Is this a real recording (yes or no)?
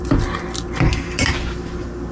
yes